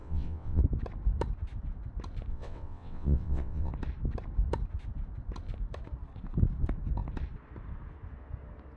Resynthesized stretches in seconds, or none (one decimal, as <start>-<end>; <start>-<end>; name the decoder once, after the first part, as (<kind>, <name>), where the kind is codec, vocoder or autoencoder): 0.0-0.6 (vocoder, WaveNeXt); 2.3-3.7